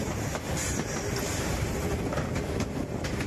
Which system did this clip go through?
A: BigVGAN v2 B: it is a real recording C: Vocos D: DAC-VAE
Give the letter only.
B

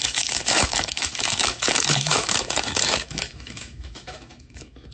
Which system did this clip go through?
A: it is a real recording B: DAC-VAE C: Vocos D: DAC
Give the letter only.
B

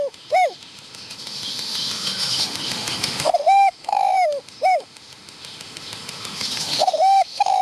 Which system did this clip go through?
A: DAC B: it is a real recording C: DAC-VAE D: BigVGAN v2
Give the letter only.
C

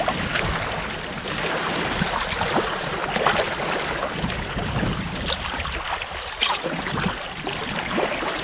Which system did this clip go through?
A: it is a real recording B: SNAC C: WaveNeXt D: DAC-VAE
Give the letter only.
A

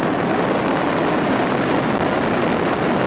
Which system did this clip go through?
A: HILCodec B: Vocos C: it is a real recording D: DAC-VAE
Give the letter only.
C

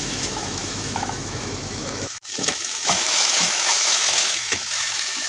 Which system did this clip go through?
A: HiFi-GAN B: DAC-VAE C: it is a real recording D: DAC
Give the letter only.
B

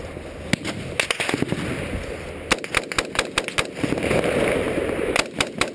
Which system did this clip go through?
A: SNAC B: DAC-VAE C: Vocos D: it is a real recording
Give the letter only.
D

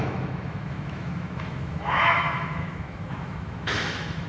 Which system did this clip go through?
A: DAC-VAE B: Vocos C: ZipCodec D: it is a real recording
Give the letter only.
A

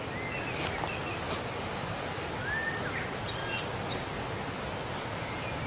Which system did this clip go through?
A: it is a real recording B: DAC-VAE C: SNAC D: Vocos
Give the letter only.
A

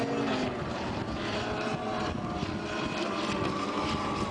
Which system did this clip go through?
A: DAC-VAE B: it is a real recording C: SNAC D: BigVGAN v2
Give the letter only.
B